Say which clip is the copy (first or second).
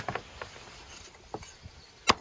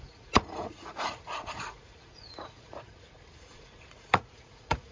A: second